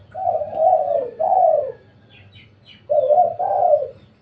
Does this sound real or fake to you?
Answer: real